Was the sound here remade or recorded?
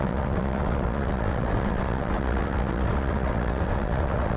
remade